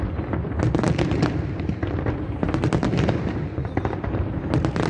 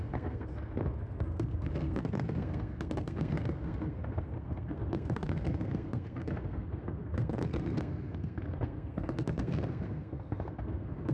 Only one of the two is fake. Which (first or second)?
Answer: second